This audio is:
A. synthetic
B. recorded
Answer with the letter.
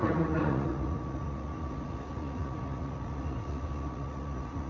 A